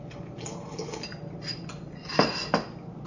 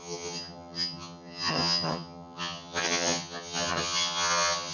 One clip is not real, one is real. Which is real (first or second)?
first